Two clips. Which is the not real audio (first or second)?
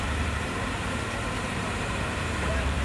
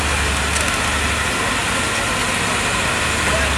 first